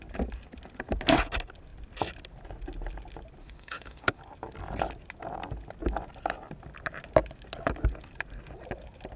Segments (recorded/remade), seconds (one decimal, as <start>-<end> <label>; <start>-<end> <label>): 0.0-3.4 recorded; 3.4-4.2 remade; 4.2-9.2 recorded